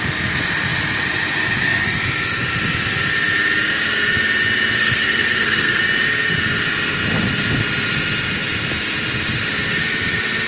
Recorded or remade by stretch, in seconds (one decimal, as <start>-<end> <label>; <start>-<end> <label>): 0.0-4.8 recorded; 4.8-5.8 remade; 5.8-10.5 recorded